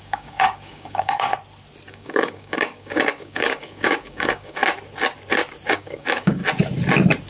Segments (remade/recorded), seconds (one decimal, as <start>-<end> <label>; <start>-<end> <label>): 0.0-1.3 remade; 1.3-1.9 recorded; 1.9-4.6 remade; 4.6-5.7 recorded; 5.7-6.4 remade; 6.4-7.3 recorded